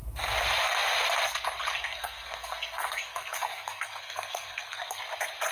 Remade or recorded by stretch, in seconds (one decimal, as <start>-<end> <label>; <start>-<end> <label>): 0.0-1.7 recorded; 1.7-5.0 remade; 5.0-5.5 recorded